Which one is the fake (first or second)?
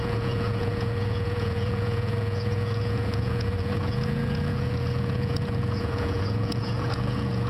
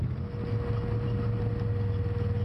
first